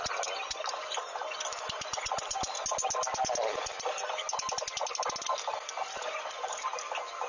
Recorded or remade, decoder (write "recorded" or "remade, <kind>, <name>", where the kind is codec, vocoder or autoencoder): recorded